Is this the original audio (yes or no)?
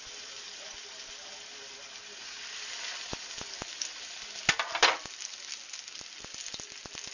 yes